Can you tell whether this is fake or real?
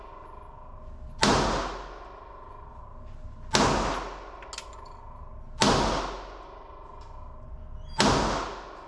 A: real